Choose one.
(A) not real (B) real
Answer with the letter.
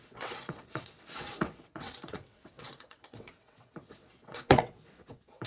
A